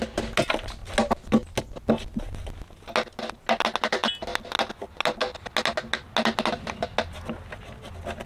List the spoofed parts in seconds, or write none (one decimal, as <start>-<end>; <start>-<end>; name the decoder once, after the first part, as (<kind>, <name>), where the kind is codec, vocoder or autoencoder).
none